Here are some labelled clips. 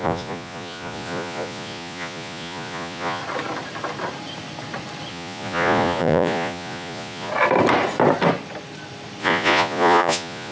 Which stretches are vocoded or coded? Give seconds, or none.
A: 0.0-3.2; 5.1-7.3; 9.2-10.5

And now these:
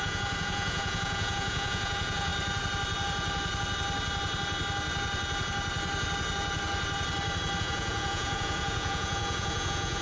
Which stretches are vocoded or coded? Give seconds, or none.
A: 0.0-2.3; 7.6-10.0

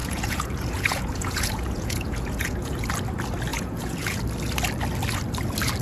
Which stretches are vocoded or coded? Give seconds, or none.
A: 0.0-2.9; 3.5-4.2

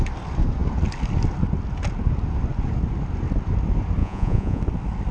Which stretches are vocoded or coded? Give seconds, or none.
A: 4.0-4.6